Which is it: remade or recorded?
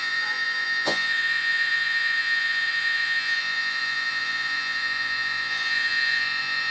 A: remade